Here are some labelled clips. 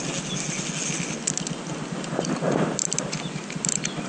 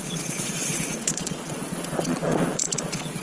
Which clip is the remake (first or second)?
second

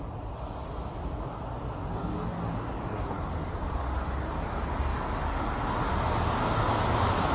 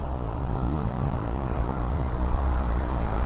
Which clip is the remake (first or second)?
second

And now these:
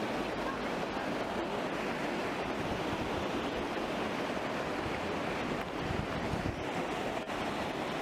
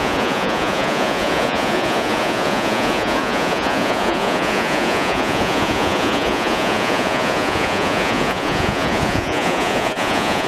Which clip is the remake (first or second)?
second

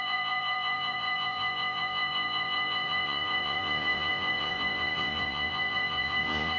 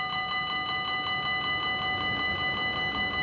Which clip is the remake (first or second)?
first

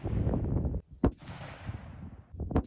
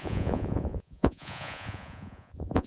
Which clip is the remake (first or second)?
second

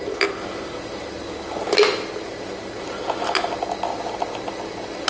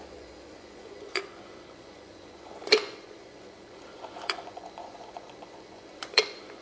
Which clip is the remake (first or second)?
second